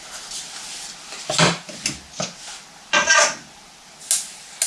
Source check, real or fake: real